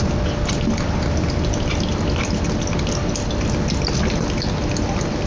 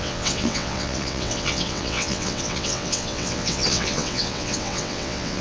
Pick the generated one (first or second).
second